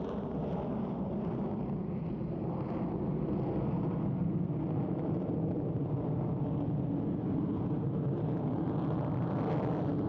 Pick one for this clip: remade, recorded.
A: recorded